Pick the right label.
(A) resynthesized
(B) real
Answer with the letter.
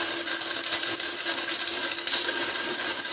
B